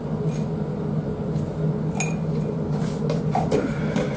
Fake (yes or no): no